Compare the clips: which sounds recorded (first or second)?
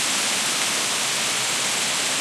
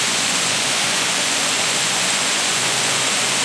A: first